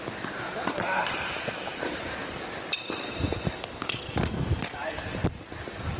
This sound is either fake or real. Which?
fake